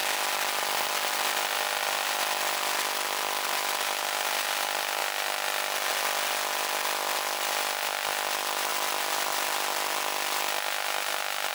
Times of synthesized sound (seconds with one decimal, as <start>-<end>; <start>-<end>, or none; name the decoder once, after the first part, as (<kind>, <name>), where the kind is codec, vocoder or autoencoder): 5.0-5.9 (vocoder, BigVGAN v2)